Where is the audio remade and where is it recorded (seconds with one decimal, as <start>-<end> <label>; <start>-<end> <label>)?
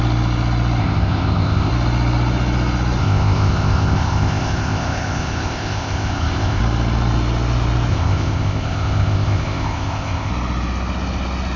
0.0-0.8 recorded; 0.8-1.7 remade; 1.7-3.0 recorded; 3.0-6.6 remade; 6.6-7.9 recorded; 7.9-10.3 remade; 10.3-11.6 recorded